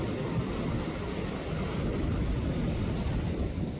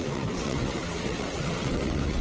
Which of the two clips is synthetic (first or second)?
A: second